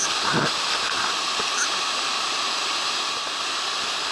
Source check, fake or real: real